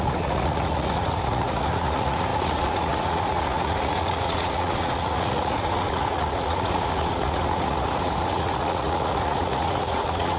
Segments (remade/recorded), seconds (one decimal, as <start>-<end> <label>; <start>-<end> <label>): 0.0-10.4 remade